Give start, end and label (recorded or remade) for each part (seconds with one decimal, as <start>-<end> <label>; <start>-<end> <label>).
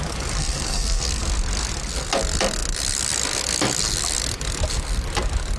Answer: 0.0-0.4 recorded; 0.4-1.3 remade; 1.3-5.6 recorded